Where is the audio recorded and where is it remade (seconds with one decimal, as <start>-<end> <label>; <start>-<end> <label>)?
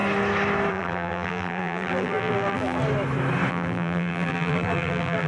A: 0.0-0.7 recorded; 0.7-2.8 remade; 2.8-3.5 recorded; 3.5-5.3 remade